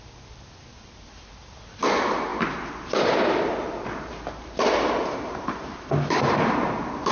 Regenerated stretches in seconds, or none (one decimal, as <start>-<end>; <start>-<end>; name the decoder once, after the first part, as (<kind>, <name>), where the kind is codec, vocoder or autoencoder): 2.3-6.3 (vocoder, BigVGAN v2)